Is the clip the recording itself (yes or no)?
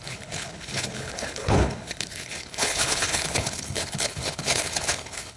no